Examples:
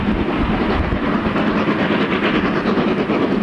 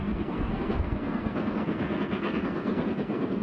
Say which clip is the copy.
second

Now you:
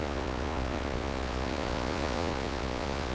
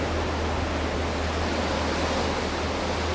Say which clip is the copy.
first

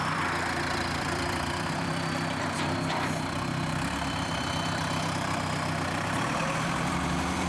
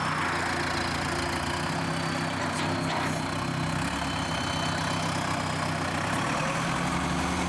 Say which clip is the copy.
first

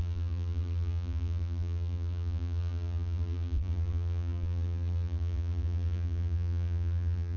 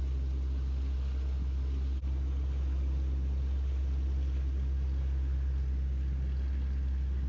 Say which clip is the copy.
first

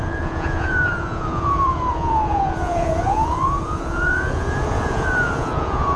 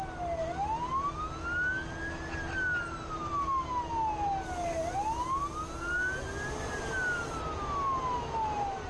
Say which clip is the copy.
first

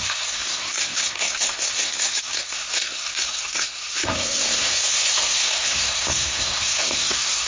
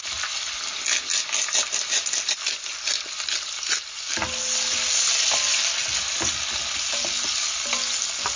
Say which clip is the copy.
first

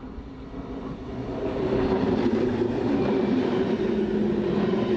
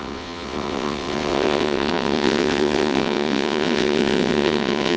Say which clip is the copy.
second